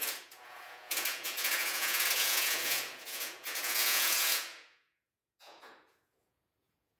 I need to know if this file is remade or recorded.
remade